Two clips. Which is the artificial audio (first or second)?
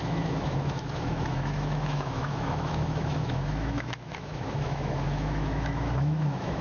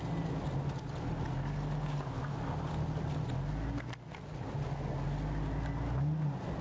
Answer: first